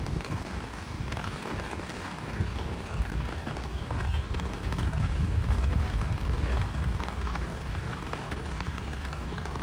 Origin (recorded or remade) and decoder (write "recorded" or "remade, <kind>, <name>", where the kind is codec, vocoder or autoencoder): remade, codec, DAC